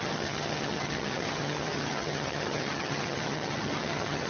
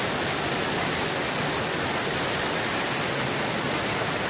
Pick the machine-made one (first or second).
first